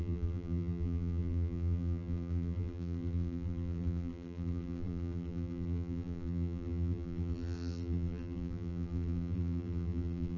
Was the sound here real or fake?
fake